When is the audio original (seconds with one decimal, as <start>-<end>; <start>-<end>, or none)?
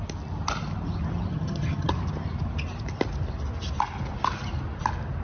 0.0-1.3; 1.9-5.2